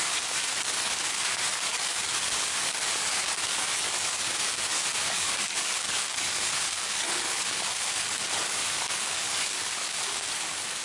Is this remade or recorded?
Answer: remade